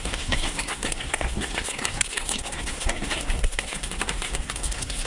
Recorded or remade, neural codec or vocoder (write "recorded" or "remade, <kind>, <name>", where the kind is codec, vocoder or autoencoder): remade, codec, SNAC